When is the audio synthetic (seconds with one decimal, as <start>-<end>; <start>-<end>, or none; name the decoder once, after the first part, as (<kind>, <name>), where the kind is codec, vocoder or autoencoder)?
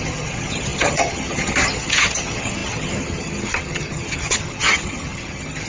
0.0-5.7 (vocoder, HiFi-GAN)